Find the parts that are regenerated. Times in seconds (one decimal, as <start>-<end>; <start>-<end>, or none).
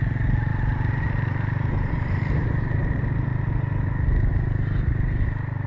0.5-3.1